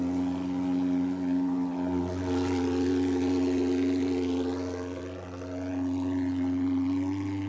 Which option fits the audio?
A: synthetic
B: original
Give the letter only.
B